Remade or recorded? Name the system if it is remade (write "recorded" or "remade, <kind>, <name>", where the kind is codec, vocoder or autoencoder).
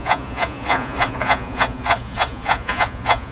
remade, vocoder, Vocos